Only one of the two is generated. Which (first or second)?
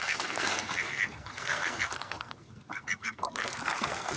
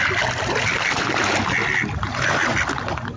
first